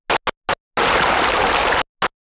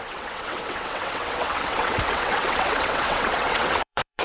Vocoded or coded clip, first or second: second